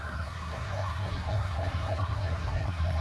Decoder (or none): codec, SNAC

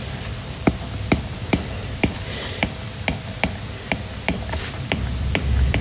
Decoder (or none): vocoder, BigVGAN v2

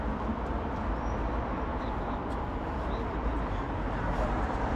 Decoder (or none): none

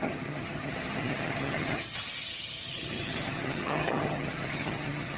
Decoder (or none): vocoder, HiFi-GAN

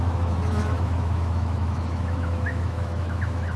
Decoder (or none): autoencoder, DAC-VAE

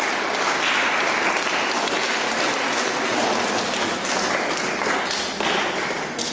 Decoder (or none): none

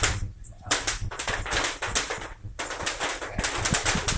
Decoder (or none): none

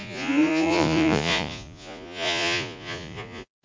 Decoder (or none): vocoder, Vocos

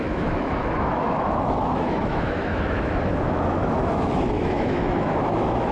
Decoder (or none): autoencoder, DAC-VAE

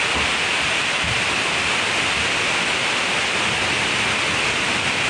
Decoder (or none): none